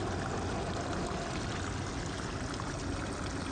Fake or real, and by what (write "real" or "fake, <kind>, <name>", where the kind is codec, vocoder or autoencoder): real